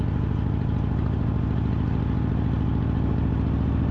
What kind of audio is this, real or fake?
real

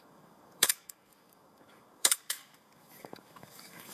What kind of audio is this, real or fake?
fake